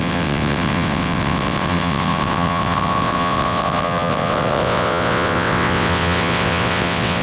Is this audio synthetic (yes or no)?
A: yes